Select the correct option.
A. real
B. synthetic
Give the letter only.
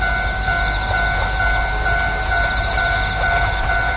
A